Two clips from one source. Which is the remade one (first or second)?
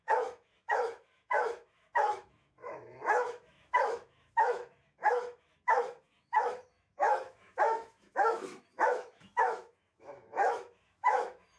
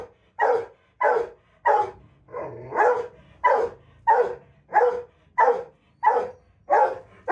first